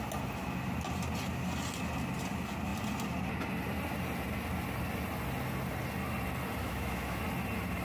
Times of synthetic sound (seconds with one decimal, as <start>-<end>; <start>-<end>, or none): 6.6-7.2